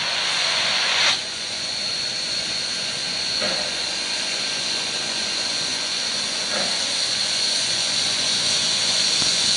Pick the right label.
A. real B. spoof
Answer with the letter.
B